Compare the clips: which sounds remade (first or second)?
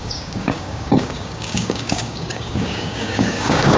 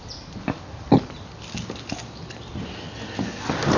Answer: first